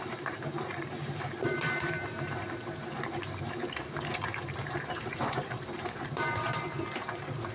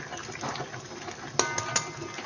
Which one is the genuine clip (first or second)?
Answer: second